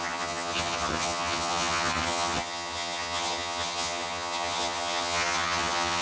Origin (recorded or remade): remade